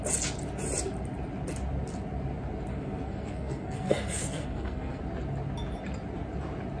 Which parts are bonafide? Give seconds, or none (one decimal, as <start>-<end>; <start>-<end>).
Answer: 0.0-2.7; 5.0-6.8